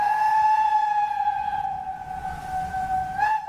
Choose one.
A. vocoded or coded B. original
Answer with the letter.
A